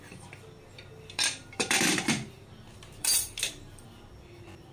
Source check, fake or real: fake